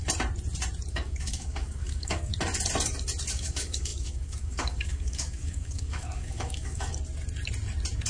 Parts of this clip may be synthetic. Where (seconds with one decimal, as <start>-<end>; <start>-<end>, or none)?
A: 0.9-2.3; 3.3-6.9